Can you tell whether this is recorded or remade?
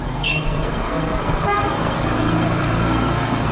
remade